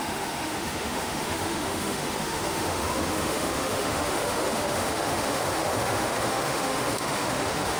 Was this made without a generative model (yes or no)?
no